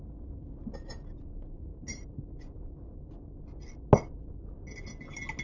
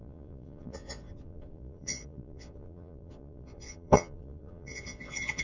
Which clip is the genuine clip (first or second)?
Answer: first